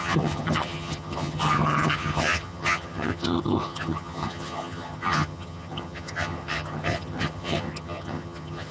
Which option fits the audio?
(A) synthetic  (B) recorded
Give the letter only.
A